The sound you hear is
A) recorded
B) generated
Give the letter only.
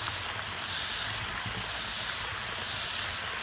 A